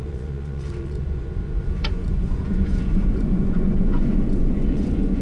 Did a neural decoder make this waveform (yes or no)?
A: yes